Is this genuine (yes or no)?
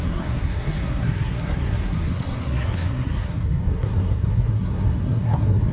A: no